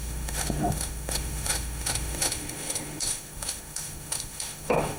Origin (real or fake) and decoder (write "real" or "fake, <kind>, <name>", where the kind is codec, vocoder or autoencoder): fake, autoencoder, DAC-VAE